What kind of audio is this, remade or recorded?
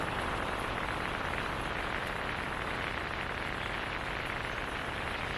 recorded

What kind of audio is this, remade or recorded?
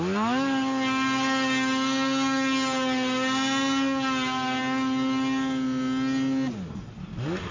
recorded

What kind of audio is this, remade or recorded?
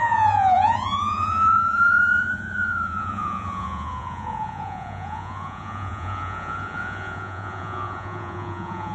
remade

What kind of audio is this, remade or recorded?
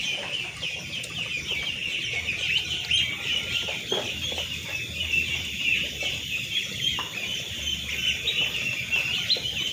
recorded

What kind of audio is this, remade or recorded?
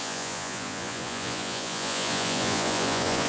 remade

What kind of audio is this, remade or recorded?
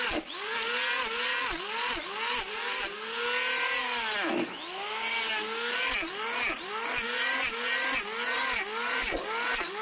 recorded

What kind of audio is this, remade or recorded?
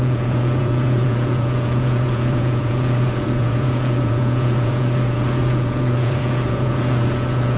remade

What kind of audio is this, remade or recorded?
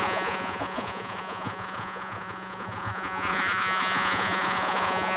remade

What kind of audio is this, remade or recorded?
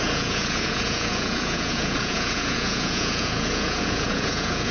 remade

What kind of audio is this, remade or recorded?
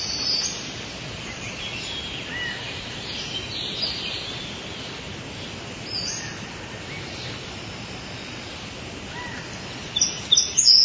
recorded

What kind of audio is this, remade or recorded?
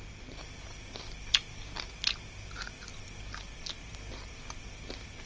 recorded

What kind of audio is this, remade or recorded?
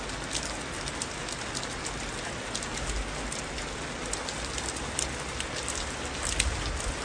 recorded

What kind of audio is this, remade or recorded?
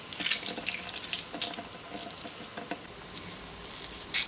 recorded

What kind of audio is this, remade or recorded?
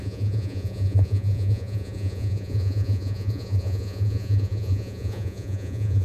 remade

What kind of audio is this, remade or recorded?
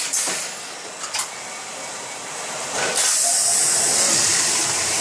recorded